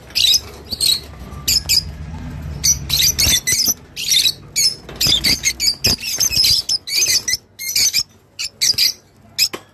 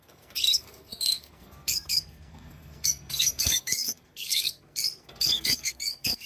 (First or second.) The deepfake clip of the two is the second